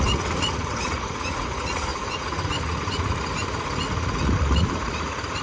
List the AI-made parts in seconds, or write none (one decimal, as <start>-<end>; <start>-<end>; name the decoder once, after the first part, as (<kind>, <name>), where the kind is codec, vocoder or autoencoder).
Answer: 0.0-5.4 (vocoder, Vocos)